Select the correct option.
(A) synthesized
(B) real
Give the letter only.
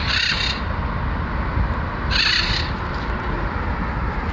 B